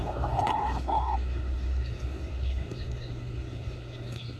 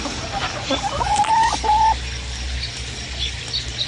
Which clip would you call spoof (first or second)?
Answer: first